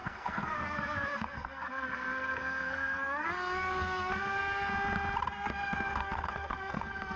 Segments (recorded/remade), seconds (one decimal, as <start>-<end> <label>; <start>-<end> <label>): 0.0-4.7 remade; 4.7-5.3 recorded; 5.3-7.2 remade